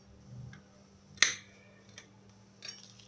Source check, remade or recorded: recorded